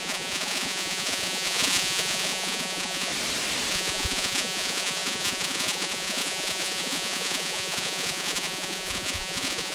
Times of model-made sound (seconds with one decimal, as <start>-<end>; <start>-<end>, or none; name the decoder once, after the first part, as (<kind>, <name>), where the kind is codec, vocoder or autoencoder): 0.0-3.1 (vocoder, Vocos); 3.7-9.7